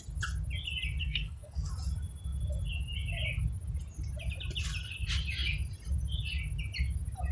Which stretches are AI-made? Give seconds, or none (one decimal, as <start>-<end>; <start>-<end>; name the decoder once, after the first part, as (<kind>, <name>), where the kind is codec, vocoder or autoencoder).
1.0-1.7 (codec, SNAC)